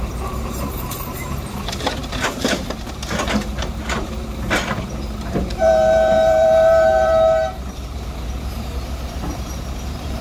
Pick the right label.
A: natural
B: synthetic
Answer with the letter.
B